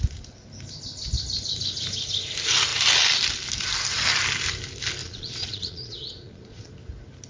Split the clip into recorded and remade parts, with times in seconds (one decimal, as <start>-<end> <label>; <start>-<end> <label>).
0.0-5.0 recorded; 5.0-6.7 remade; 6.7-7.3 recorded